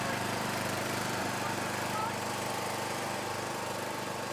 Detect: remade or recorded remade